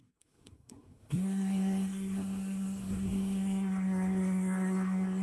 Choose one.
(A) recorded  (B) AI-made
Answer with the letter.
B